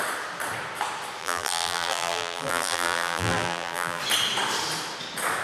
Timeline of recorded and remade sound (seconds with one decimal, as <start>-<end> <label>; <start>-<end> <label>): 0.0-1.2 recorded; 1.2-4.0 remade; 4.0-5.4 recorded